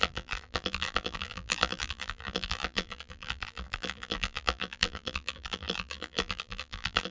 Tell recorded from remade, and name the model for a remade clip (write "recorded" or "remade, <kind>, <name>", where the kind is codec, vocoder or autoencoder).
remade, vocoder, BigVGAN v2